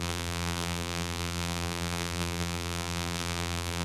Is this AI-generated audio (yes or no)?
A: yes